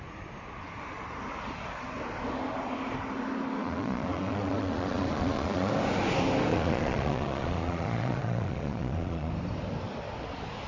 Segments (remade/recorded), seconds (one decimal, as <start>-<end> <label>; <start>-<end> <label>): 0.0-3.6 recorded; 3.6-5.7 remade; 5.7-6.5 recorded; 6.5-9.3 remade; 9.3-10.7 recorded